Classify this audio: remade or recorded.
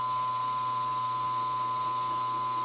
recorded